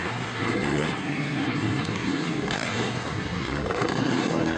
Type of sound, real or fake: fake